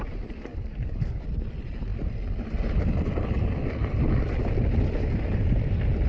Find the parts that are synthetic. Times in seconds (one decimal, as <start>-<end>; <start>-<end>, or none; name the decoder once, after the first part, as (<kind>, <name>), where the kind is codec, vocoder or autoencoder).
0.5-1.2 (codec, DAC)

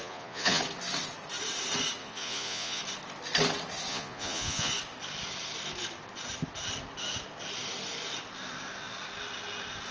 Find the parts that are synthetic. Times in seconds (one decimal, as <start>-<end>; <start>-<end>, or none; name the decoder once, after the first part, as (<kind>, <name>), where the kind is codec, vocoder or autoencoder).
0.0-0.6 (vocoder, Vocos); 2.0-2.8; 3.9-4.7

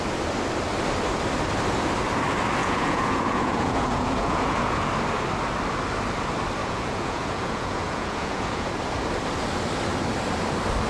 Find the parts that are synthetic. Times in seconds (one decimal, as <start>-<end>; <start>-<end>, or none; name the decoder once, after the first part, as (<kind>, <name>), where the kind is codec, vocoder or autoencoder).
2.6-4.9 (vocoder, Vocos); 6.6-8.7

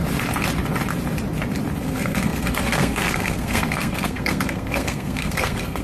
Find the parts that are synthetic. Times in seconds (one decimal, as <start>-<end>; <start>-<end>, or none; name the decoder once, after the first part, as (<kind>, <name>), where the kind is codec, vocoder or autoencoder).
1.8-5.8 (codec, SNAC)

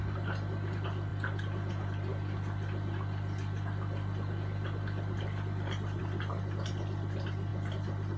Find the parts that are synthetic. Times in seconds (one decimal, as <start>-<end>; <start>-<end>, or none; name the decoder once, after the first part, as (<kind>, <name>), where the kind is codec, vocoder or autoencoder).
none

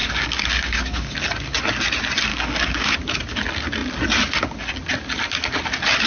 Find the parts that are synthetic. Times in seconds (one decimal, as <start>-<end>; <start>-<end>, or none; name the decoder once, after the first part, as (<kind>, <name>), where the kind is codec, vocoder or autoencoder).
0.0-1.1 (codec, DAC); 2.3-2.9

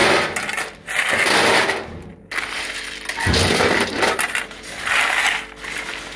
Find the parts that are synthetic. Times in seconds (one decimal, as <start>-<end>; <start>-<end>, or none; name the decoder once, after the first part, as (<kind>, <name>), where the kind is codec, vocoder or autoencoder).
none

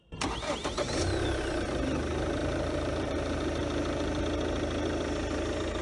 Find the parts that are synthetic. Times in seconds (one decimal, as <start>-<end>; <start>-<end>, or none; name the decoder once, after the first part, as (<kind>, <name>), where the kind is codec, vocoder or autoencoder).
2.4-4.2 (vocoder, BigVGAN v2)